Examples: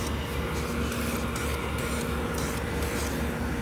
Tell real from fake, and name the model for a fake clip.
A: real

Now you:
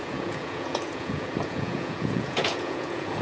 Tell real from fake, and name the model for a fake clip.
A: fake, vocoder, Vocos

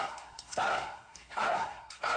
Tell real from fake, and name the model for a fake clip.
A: fake, codec, SNAC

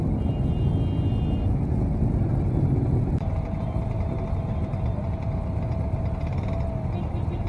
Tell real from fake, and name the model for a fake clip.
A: real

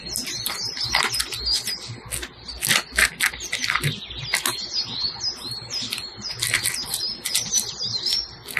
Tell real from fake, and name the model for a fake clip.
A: real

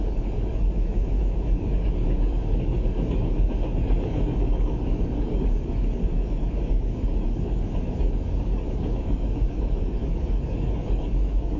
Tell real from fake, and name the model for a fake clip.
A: fake, codec, DAC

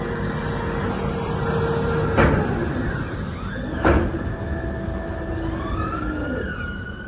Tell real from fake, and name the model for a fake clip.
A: real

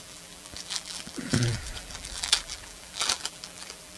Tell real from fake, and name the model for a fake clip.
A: fake, vocoder, BigVGAN v2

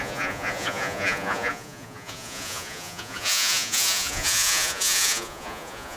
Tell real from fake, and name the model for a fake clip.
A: fake, vocoder, Vocos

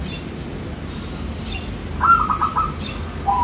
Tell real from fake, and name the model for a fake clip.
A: real